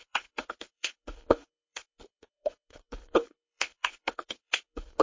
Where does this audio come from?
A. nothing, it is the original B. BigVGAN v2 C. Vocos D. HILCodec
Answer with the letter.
D